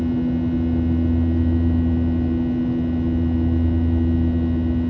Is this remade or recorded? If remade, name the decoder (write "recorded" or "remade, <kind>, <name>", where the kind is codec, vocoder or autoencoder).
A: recorded